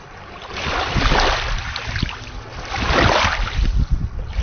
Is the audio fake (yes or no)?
no